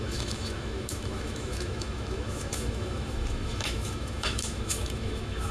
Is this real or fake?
fake